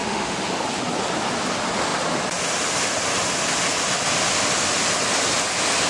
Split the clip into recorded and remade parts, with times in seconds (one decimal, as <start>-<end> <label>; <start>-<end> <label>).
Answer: 0.0-0.5 remade; 0.5-5.9 recorded